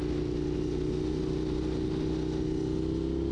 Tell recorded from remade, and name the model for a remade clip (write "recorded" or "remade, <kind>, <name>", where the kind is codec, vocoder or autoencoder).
recorded